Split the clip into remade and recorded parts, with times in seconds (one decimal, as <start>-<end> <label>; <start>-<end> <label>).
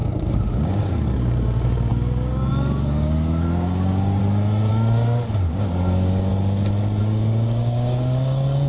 0.0-4.2 remade; 4.2-4.7 recorded; 4.7-6.3 remade; 6.3-7.0 recorded; 7.0-8.7 remade